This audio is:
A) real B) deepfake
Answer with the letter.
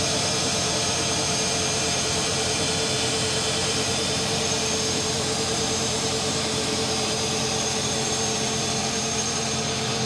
B